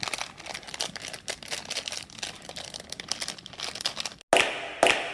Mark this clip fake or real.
real